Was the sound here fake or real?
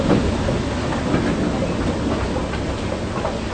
real